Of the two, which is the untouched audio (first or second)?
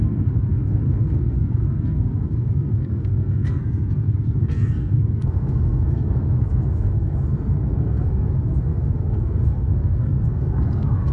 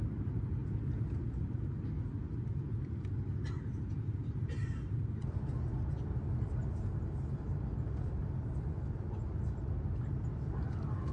second